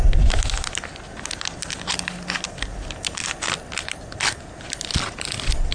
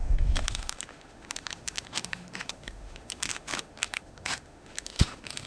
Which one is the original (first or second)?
first